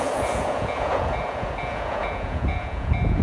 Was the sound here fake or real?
fake